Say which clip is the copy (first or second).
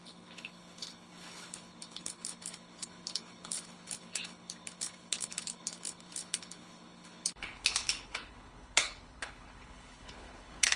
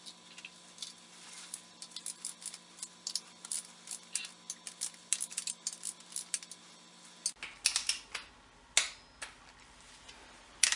first